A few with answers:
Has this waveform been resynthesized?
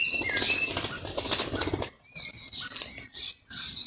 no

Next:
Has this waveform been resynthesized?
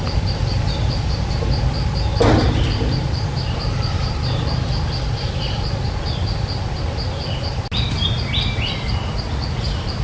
no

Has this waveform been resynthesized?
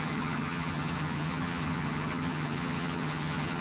yes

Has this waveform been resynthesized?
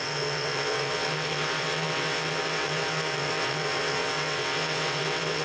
yes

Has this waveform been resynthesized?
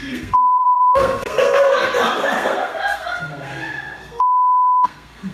yes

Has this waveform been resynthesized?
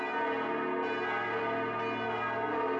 no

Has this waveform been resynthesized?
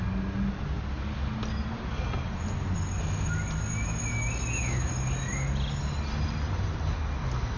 no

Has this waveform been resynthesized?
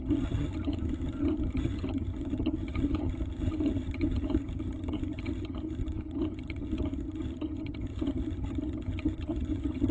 yes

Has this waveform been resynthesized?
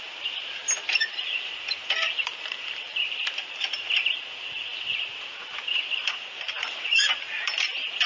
yes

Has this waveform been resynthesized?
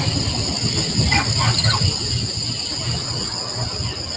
no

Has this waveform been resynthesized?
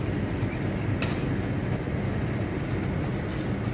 no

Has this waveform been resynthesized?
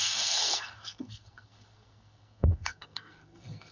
yes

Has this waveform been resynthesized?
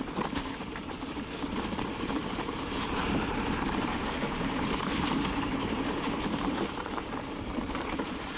yes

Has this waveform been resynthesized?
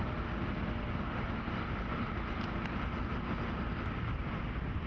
no